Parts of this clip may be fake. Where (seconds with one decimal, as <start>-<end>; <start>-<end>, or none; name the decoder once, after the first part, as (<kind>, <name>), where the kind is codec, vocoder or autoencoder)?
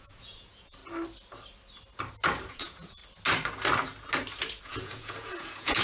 0.0-0.8 (vocoder, Vocos); 2.5-3.0; 4.6-5.8